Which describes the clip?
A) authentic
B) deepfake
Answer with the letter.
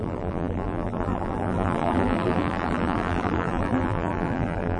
B